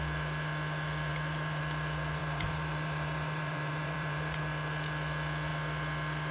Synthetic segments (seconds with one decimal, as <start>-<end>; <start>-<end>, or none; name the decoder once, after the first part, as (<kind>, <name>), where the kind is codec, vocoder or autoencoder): 1.1-1.6 (vocoder, BigVGAN v2); 2.2-4.4